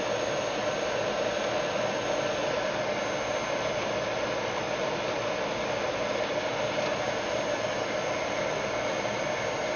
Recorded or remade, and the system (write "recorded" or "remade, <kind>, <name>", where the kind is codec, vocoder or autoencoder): recorded